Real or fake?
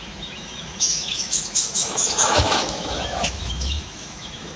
fake